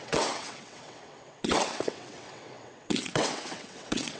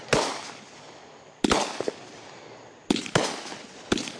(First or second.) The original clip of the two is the second